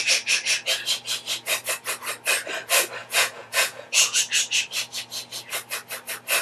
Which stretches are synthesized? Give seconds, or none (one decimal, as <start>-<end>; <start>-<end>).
3.0-4.2